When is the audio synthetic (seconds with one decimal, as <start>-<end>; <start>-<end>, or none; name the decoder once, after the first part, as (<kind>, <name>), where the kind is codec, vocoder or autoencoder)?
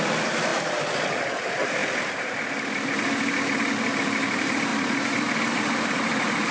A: 0.5-1.3 (vocoder, BigVGAN v2); 4.7-5.8